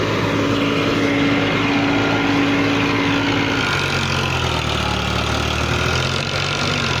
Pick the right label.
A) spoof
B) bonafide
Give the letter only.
B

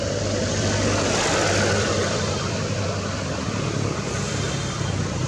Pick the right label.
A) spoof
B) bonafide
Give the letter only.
A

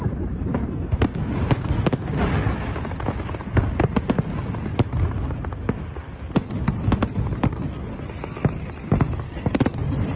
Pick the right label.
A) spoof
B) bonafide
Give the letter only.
B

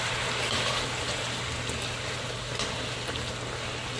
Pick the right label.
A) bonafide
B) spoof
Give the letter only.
A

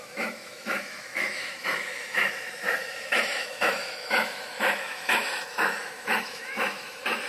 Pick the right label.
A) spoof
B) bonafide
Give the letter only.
A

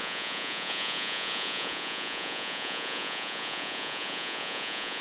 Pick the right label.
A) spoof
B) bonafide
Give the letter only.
A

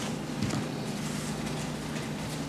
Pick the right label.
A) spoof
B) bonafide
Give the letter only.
B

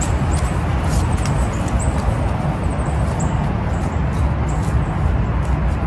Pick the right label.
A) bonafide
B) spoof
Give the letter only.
A